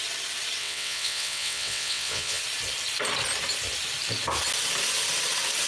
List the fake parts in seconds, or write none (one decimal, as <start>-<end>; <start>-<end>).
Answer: 0.6-2.4